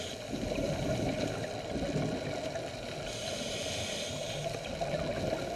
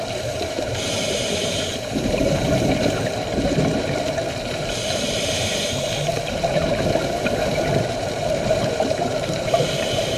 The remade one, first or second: second